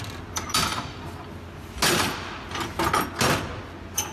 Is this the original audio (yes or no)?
yes